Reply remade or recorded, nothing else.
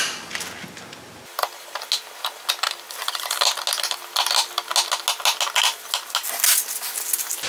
recorded